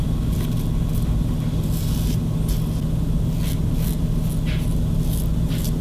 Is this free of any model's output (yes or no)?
yes